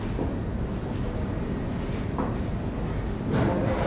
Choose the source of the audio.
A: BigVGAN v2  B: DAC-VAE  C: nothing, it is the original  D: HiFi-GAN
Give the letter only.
C